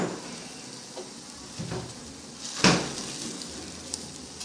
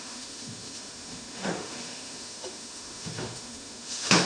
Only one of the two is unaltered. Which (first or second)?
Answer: first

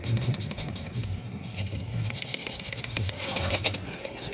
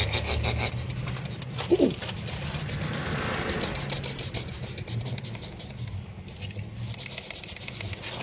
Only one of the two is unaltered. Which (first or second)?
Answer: second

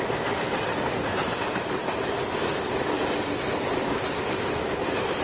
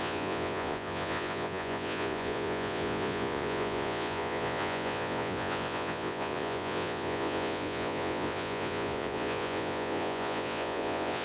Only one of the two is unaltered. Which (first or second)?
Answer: first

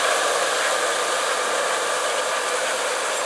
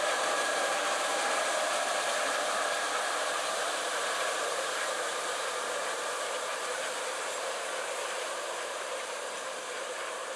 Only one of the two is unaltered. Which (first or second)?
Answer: first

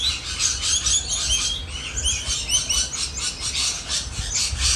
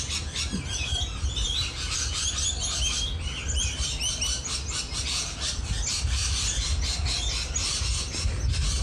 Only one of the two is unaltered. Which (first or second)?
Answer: first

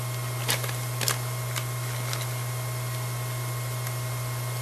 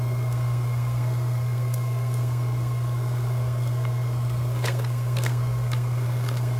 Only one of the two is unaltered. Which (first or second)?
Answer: first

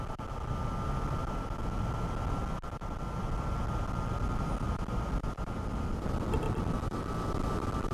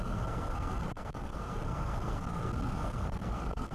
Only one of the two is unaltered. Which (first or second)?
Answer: first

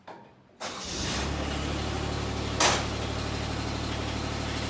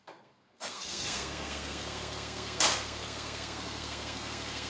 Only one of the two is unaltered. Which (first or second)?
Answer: first